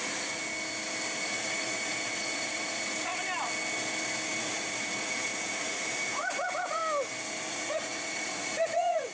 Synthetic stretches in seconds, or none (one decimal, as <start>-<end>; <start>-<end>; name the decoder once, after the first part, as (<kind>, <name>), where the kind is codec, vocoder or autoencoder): 0.0-0.4 (vocoder, Vocos); 1.2-3.1; 4.4-6.8; 7.5-9.1

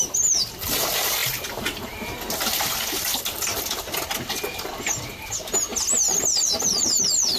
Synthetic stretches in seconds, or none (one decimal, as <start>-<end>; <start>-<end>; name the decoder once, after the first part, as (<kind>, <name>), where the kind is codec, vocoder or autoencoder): none

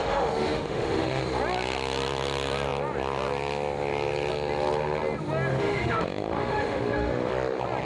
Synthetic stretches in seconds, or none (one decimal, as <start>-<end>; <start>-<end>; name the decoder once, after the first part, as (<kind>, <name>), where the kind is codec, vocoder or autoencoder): 0.0-1.2 (autoencoder, DAC-VAE); 5.5-7.3

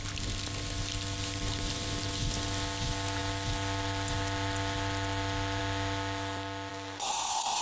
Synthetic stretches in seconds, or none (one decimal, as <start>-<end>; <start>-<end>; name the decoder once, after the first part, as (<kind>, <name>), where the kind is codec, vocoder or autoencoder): 6.7-7.6 (codec, SNAC)

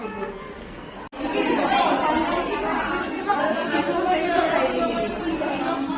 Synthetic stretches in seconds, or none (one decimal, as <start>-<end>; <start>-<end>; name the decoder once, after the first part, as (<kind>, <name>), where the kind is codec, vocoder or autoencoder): 0.0-1.0 (codec, SNAC); 3.0-4.5; 5.3-6.0